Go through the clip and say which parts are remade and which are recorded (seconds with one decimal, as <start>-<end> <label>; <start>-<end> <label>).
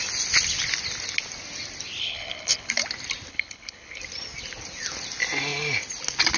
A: 0.0-2.0 recorded; 2.0-2.7 remade; 2.7-3.3 recorded; 3.3-4.0 remade; 4.0-6.4 recorded